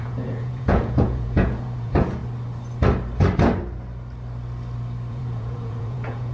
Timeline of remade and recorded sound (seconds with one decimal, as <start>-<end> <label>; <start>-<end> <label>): 0.0-2.2 remade; 2.2-5.1 recorded; 5.1-6.3 remade